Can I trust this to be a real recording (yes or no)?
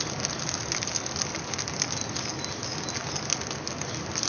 yes